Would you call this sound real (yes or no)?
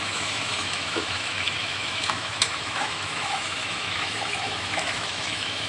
no